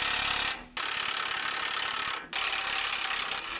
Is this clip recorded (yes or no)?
yes